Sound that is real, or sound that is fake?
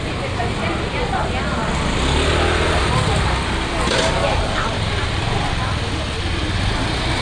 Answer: real